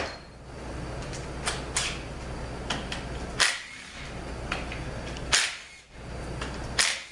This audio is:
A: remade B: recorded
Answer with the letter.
B